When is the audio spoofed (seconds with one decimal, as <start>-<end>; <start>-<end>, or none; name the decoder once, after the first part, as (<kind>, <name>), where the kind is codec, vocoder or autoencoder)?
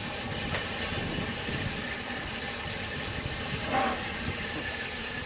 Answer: 0.0-5.3 (vocoder, BigVGAN v2)